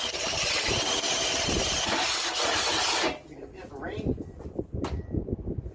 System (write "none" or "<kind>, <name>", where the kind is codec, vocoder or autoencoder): none